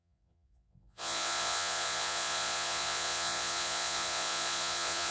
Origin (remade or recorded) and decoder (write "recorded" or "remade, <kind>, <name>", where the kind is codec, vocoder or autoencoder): remade, vocoder, Vocos